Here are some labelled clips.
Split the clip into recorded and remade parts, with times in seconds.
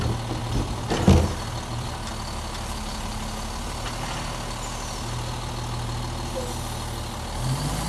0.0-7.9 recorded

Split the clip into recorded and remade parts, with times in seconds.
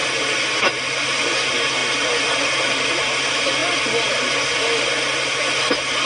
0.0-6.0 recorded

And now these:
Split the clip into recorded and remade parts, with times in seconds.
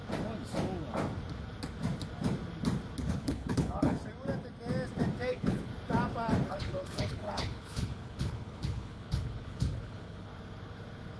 0.0-3.1 recorded; 3.1-4.0 remade; 4.0-5.3 recorded; 5.3-5.7 remade; 5.7-6.5 recorded; 6.5-10.3 remade; 10.3-11.2 recorded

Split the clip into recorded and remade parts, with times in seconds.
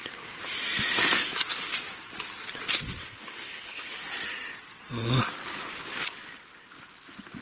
0.0-3.0 recorded; 3.0-3.9 remade; 3.9-7.4 recorded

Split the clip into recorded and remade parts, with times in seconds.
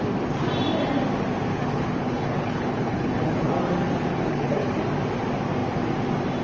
0.0-1.5 recorded; 1.5-3.5 remade; 3.5-4.1 recorded; 4.1-4.8 remade; 4.8-6.4 recorded